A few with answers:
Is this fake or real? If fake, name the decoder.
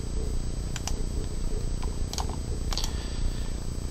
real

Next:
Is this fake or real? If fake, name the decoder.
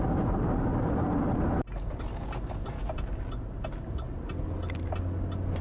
real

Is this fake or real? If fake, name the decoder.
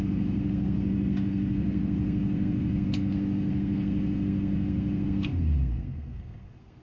fake, codec, SNAC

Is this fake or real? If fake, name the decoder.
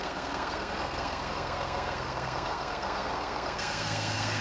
fake, codec, SNAC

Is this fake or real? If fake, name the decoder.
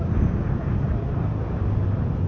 real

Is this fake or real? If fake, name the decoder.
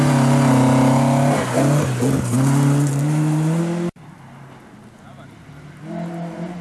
real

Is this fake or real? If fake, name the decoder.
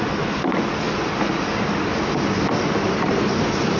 real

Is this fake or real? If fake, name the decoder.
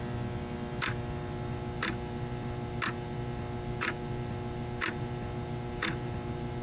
real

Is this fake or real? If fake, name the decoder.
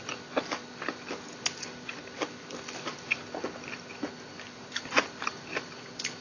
real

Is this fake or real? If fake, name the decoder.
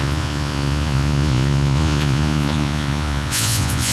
fake, vocoder, Vocos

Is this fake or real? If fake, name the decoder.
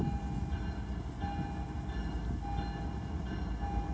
real